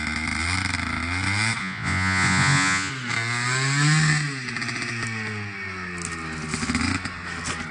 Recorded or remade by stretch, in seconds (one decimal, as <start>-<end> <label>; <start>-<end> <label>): 0.0-1.6 recorded; 1.6-2.9 remade; 2.9-7.7 recorded